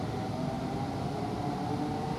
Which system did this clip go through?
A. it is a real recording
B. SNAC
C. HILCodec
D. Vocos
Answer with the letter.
A